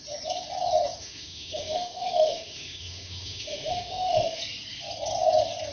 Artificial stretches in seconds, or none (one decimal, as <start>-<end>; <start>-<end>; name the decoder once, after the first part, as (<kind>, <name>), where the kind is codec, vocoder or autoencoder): 1.0-4.4 (autoencoder, DAC-VAE)